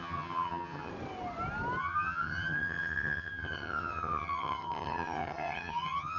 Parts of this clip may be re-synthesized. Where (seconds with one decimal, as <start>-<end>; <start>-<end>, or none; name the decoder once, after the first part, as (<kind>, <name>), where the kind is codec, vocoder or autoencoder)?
0.0-0.9 (vocoder, HiFi-GAN); 1.8-6.2